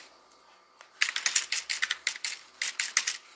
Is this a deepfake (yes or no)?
no